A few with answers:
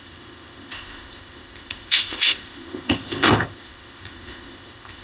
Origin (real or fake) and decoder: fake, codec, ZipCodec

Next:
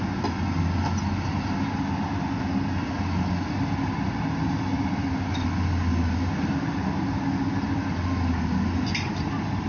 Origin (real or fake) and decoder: real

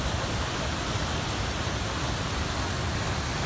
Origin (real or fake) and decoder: real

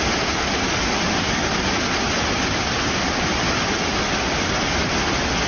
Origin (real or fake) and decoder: real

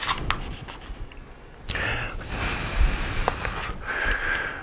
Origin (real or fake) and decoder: real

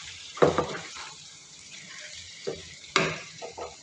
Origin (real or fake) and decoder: fake, vocoder, BigVGAN v2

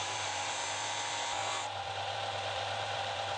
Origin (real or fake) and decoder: fake, vocoder, BigVGAN v2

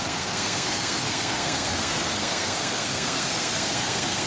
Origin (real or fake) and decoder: fake, codec, SNAC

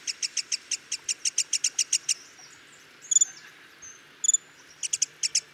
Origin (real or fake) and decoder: real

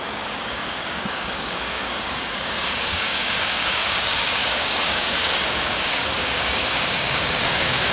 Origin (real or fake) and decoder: fake, codec, DAC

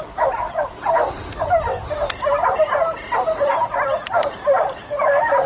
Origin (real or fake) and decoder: real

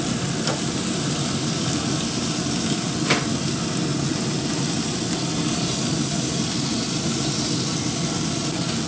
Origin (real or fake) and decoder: real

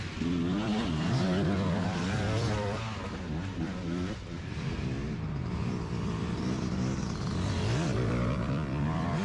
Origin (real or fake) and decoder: fake, vocoder, BigVGAN v2